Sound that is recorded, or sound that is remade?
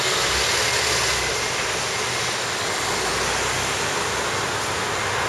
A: recorded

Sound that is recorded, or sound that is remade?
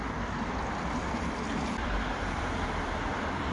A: recorded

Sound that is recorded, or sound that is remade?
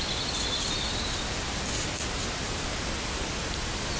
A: recorded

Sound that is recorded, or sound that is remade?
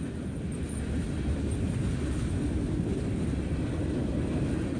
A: recorded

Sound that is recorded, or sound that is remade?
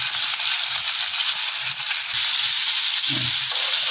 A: recorded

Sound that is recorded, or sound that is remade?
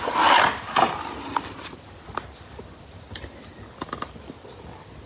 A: recorded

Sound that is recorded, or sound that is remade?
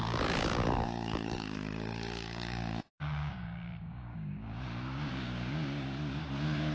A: remade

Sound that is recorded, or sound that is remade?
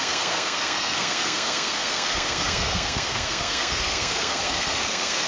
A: remade